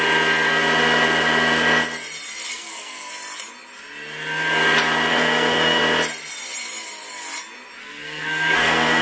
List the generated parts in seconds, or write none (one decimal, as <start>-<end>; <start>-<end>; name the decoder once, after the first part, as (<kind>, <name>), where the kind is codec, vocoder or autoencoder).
2.5-3.1 (codec, SNAC); 5.1-5.8; 7.8-9.0